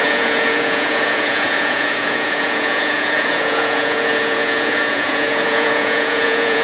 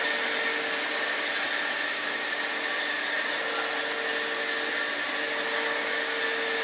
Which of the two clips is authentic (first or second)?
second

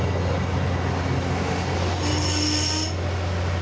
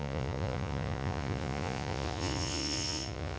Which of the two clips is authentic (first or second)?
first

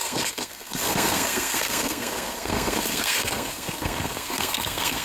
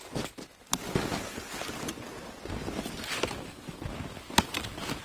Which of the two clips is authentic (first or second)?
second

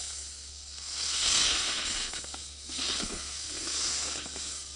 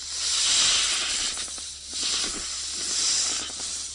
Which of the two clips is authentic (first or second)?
second